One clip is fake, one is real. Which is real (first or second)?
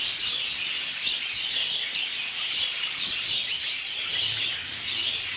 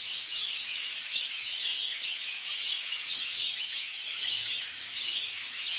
first